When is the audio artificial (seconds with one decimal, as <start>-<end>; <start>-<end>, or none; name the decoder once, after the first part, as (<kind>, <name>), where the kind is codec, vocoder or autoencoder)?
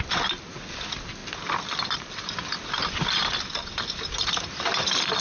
none